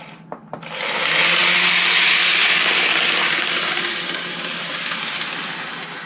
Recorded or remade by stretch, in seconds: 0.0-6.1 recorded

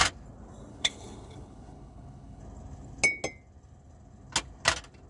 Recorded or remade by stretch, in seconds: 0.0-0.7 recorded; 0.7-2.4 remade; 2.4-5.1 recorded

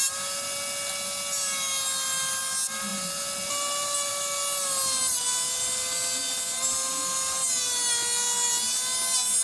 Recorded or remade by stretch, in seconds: 0.0-9.4 recorded